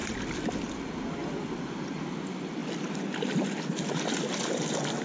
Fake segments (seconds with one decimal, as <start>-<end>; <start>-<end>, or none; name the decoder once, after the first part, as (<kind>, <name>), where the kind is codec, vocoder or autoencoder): none